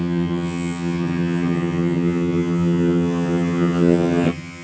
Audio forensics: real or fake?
fake